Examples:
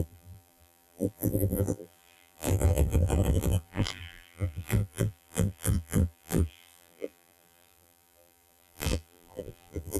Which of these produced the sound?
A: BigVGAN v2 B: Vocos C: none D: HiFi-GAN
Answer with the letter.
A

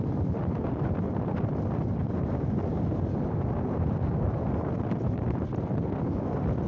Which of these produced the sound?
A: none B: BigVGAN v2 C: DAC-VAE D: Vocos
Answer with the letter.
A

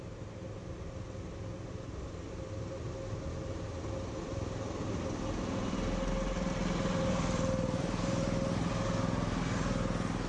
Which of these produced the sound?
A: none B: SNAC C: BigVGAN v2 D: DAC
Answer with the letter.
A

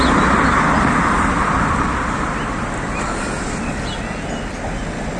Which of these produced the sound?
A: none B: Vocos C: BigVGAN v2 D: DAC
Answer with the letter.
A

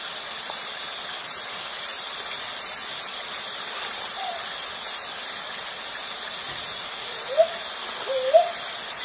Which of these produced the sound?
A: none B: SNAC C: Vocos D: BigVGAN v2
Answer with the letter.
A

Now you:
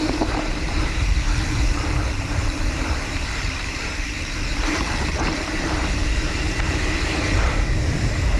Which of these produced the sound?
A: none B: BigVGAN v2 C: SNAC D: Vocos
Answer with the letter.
B